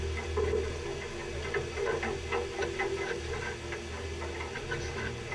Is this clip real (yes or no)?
yes